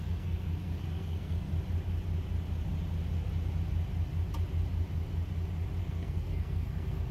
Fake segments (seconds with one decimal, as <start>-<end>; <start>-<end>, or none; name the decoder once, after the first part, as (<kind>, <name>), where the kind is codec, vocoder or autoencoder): 0.0-1.5 (codec, SNAC); 5.8-7.1